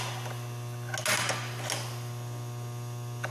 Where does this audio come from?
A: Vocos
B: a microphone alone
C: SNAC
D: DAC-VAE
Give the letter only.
B